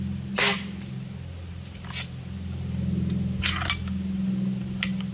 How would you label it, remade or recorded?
recorded